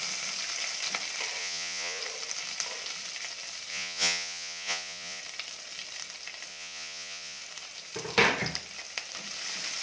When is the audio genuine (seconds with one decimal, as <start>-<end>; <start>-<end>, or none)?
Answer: 0.0-1.4; 2.0-3.7; 5.2-6.5; 7.4-9.8